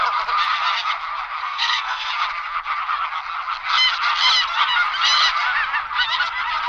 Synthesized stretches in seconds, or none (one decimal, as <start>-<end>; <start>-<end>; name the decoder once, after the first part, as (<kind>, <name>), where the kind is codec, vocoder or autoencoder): 1.4-2.1 (codec, SNAC)